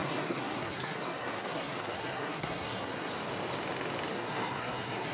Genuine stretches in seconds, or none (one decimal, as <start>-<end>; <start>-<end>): 3.1-4.1